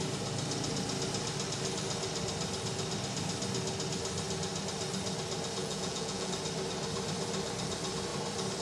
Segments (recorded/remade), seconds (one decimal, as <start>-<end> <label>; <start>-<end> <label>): 0.0-5.6 recorded; 5.6-6.3 remade; 6.3-8.6 recorded